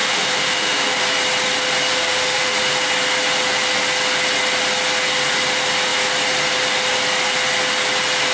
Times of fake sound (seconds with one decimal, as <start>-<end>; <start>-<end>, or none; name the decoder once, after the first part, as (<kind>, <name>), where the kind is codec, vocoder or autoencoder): 0.0-1.0 (autoencoder, DAC-VAE); 1.9-2.5